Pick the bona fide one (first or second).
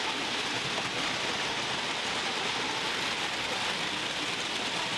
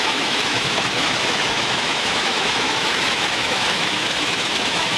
first